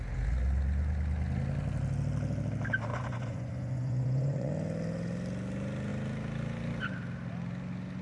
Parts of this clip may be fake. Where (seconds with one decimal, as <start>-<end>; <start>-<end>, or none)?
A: 2.9-4.5